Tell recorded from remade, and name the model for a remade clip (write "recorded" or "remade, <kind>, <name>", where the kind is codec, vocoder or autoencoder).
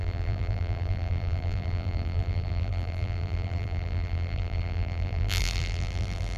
remade, vocoder, BigVGAN v2